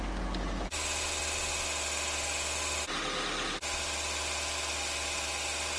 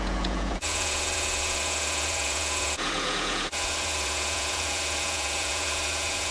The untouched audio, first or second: first